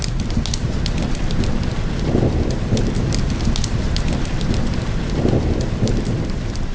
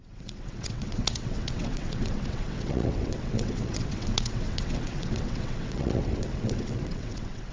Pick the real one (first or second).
first